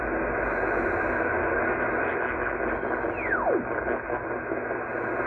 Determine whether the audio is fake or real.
real